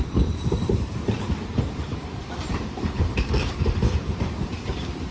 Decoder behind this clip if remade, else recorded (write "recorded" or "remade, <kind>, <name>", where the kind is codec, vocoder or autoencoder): remade, vocoder, BigVGAN v2